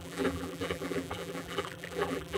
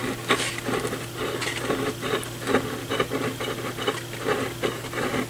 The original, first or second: second